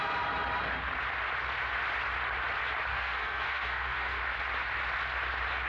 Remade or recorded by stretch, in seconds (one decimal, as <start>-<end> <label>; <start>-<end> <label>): 0.0-2.9 recorded; 2.9-4.2 remade; 4.2-5.7 recorded